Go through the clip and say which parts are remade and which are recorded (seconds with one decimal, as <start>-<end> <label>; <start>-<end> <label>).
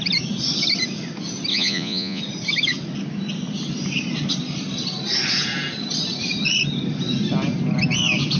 0.0-1.5 recorded; 1.5-2.2 remade; 2.2-8.4 recorded